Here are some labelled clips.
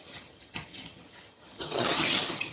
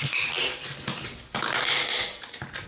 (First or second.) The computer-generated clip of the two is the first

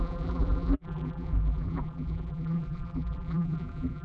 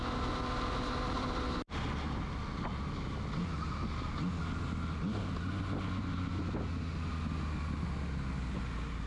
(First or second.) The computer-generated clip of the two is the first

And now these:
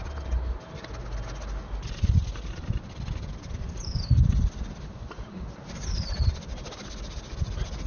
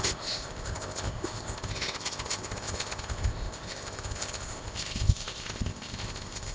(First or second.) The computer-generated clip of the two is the second